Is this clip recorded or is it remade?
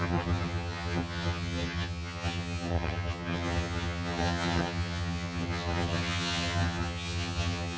remade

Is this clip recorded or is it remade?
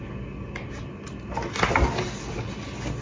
recorded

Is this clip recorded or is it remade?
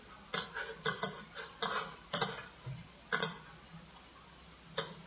recorded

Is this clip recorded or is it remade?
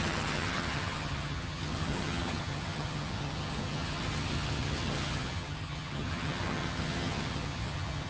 remade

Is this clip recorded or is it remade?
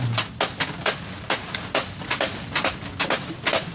recorded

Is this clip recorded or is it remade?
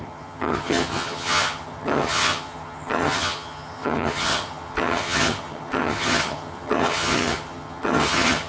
remade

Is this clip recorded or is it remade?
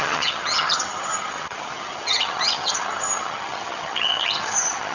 remade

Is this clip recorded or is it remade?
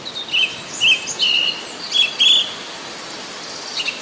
recorded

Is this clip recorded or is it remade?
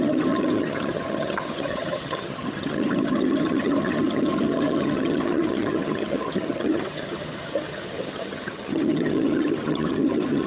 remade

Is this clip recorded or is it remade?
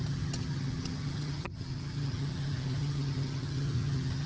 remade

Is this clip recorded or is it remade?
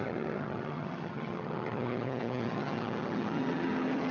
remade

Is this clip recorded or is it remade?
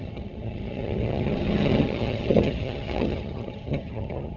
remade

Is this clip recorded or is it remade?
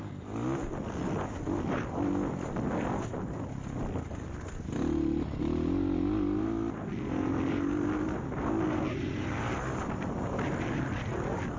recorded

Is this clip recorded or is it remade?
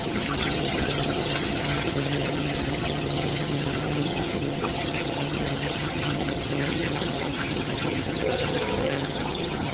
remade